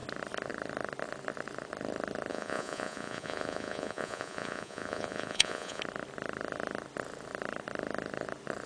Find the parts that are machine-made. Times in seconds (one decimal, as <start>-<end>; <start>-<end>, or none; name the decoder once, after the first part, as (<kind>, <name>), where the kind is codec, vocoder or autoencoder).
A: 2.3-5.8 (vocoder, Vocos)